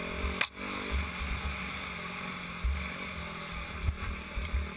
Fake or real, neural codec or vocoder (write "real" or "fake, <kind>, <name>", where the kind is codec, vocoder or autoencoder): real